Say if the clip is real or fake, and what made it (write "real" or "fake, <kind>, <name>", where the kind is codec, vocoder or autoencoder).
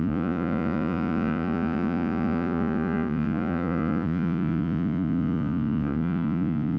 fake, vocoder, Vocos